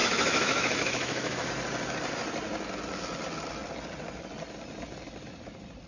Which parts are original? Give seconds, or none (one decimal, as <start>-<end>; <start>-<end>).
1.5-5.9